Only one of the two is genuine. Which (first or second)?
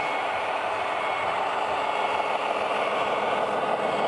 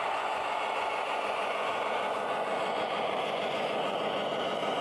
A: first